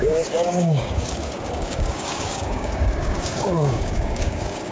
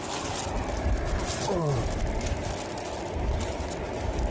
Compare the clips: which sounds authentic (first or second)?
second